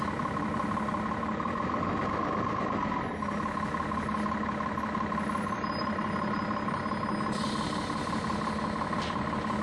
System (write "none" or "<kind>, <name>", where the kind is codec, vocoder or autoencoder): none